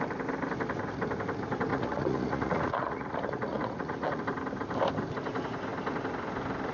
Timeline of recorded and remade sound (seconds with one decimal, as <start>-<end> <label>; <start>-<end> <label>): 0.0-1.7 recorded; 1.7-4.2 remade; 4.2-6.7 recorded